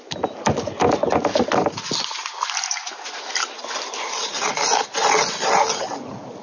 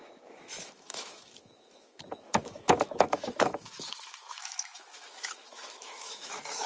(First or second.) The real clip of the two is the first